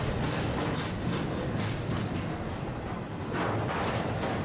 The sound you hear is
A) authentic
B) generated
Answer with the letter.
A